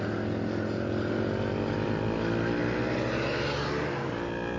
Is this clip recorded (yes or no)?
yes